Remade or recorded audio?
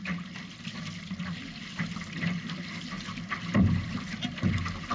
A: recorded